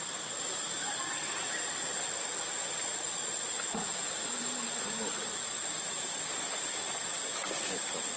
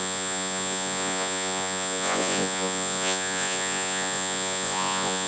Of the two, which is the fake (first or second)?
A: second